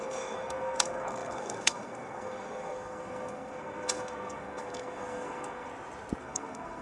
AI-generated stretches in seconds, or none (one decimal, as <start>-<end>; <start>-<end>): 0.0-5.7; 6.2-6.8